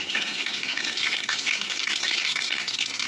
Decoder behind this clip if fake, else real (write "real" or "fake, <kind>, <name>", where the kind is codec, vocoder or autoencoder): fake, codec, SNAC